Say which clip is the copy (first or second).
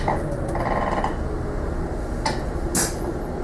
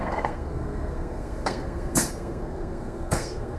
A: second